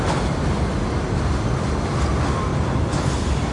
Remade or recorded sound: recorded